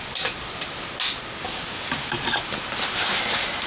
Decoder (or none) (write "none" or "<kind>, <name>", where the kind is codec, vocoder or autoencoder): none